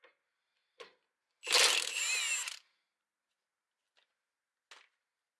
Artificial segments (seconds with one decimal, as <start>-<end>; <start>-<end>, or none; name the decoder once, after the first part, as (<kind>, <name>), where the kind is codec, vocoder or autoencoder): none